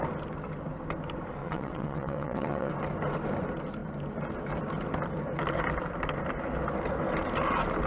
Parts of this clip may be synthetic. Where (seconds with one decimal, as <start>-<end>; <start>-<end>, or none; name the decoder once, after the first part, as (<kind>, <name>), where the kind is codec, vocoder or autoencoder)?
1.4-2.7 (vocoder, WaveNeXt)